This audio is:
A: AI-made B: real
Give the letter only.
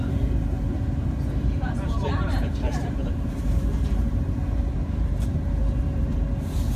A